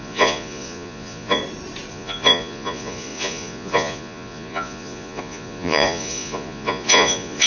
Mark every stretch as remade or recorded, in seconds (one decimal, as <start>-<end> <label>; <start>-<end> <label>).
0.0-1.4 remade; 1.4-1.9 recorded; 1.9-7.5 remade